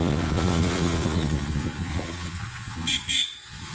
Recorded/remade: remade